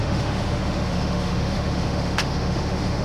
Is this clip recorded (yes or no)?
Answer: no